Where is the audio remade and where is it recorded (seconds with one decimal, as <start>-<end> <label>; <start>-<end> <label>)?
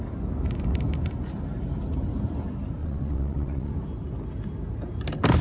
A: 0.0-2.8 recorded; 2.8-3.7 remade; 3.7-5.4 recorded